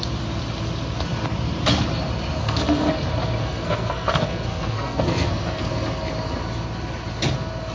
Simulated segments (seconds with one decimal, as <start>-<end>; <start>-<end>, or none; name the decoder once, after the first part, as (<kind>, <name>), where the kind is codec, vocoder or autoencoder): 2.4-2.9 (codec, SNAC); 3.4-5.7